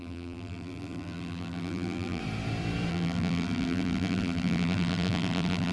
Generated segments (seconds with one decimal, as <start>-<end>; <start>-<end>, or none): 0.0-2.2; 2.9-5.7